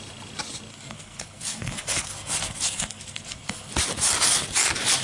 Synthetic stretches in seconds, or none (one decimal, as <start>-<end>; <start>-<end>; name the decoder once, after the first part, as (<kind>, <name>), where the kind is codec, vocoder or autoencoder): 0.7-3.7 (codec, SNAC)